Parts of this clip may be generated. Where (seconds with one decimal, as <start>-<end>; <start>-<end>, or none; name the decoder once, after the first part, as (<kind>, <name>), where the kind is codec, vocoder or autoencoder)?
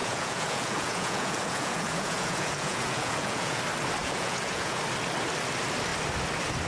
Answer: 0.0-3.6 (vocoder, Vocos); 4.0-4.8